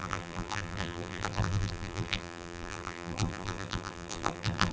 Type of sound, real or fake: fake